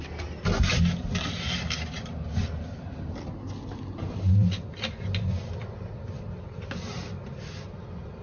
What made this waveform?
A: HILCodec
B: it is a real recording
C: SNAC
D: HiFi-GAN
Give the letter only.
B